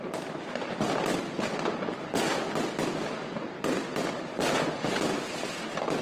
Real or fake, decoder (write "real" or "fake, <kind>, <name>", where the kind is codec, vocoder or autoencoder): real